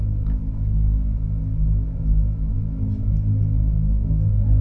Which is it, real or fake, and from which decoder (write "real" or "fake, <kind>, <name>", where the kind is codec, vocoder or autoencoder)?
real